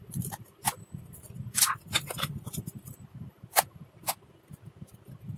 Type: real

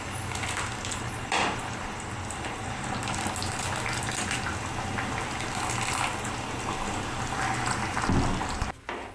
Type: real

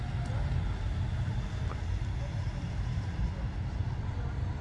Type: real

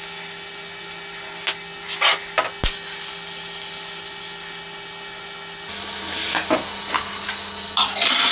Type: real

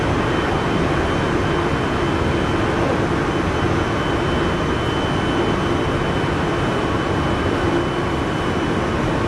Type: real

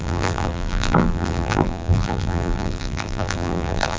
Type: fake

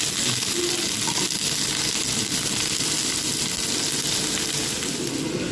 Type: real